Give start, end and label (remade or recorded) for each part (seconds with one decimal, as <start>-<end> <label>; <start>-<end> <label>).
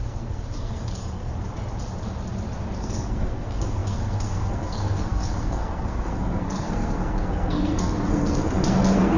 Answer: 0.0-1.3 remade; 1.3-2.8 recorded; 2.8-9.2 remade